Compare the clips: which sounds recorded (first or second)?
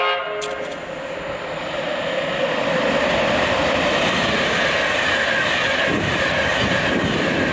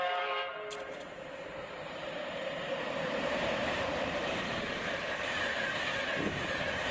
first